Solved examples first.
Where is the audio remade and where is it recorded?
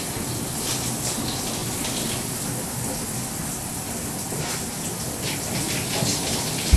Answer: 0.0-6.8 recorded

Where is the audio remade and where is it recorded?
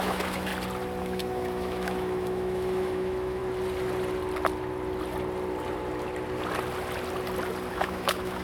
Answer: 0.0-0.5 remade; 0.5-1.0 recorded; 1.0-3.4 remade; 3.4-7.7 recorded; 7.7-8.4 remade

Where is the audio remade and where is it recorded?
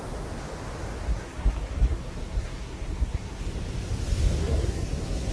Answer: 0.0-1.1 recorded; 1.1-3.4 remade; 3.4-4.4 recorded; 4.4-5.3 remade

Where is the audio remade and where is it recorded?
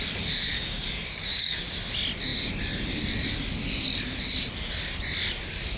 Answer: 0.0-0.5 recorded; 0.5-1.7 remade; 1.7-5.8 recorded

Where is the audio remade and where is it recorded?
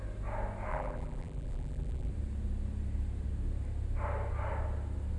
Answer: 0.0-0.7 recorded; 0.7-2.1 remade; 2.1-5.2 recorded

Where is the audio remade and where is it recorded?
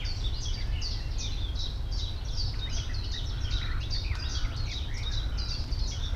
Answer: 0.0-6.2 recorded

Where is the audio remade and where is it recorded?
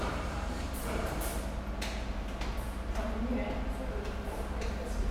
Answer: 0.0-1.3 remade; 1.3-3.8 recorded; 3.8-5.1 remade